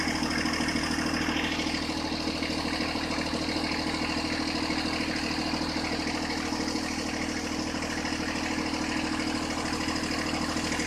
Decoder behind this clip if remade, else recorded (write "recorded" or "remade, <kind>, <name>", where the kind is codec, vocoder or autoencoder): recorded